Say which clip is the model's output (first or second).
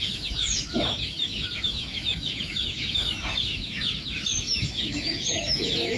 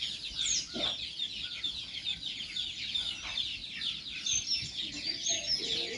first